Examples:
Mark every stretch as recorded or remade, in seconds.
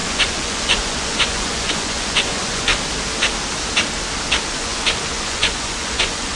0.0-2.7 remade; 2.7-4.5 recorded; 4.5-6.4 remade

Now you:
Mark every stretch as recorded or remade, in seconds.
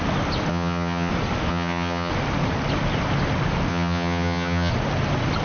0.0-0.5 recorded; 0.5-1.1 remade; 1.1-1.5 recorded; 1.5-2.1 remade; 2.1-3.7 recorded; 3.7-4.7 remade; 4.7-5.4 recorded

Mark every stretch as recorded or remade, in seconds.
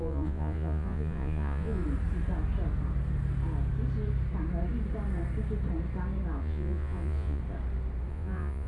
0.0-1.8 remade; 1.8-6.4 recorded; 6.4-7.4 remade; 7.4-8.1 recorded; 8.1-8.7 remade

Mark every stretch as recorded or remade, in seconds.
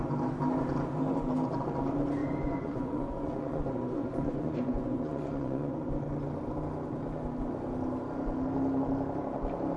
0.0-2.2 recorded; 2.2-5.9 remade; 5.9-9.8 recorded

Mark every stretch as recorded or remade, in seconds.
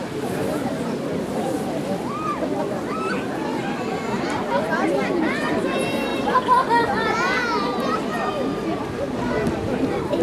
0.0-6.1 remade; 6.1-8.8 recorded; 8.8-10.2 remade